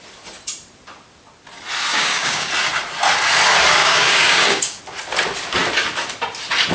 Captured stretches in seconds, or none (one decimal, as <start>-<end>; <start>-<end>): 0.0-1.9; 2.5-3.8; 4.8-6.7

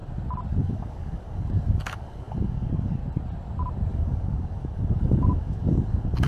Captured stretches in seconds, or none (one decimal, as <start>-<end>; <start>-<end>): 0.0-0.5; 3.0-3.9

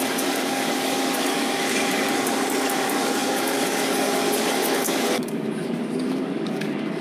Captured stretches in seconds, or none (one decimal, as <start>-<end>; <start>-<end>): none

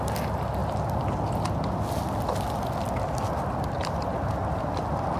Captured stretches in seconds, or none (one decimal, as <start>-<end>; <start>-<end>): 0.0-5.2

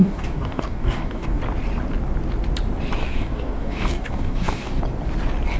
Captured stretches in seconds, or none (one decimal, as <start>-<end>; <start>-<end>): 1.4-3.0; 4.8-5.6

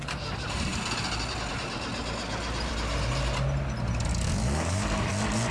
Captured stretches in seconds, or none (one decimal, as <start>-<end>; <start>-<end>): 0.0-4.1; 5.1-5.5